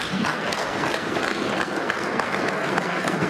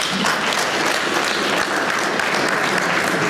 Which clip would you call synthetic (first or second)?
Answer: first